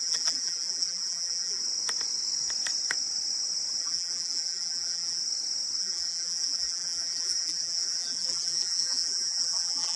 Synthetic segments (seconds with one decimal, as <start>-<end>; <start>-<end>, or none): 0.0-1.6; 3.8-5.2; 5.8-10.0